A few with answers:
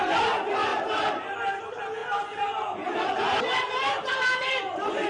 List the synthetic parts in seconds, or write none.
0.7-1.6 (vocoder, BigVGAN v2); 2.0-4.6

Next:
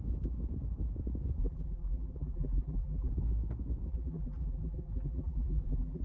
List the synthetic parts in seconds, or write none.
1.4-3.1 (vocoder, BigVGAN v2); 3.9-6.0

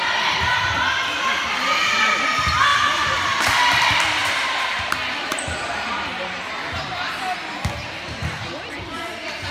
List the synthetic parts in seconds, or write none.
2.7-3.6 (vocoder, BigVGAN v2); 4.2-7.1; 8.2-8.8

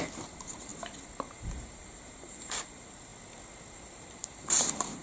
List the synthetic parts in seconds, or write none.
0.0-0.7 (vocoder, BigVGAN v2); 1.3-3.1; 3.7-5.0